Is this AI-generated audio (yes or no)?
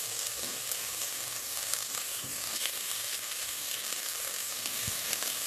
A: yes